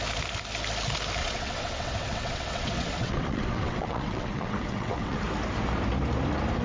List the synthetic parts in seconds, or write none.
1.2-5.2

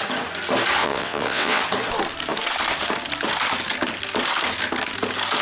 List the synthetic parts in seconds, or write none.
0.8-1.6

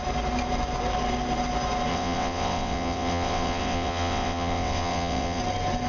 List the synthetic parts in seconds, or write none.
1.9-5.4

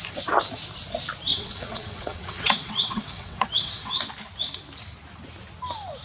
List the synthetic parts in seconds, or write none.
1.3-4.0

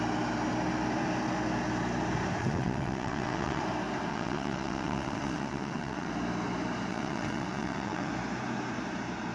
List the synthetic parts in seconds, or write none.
2.4-3.6; 4.1-6.1; 6.9-8.1

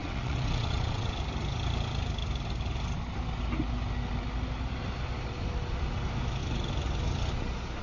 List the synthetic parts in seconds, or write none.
0.0-1.2